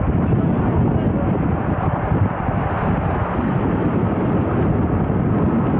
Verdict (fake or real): real